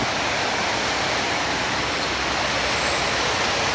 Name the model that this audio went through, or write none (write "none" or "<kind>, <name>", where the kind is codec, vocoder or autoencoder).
vocoder, BigVGAN v2